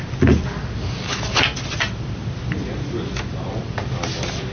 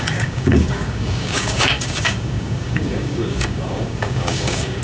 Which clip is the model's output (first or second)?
second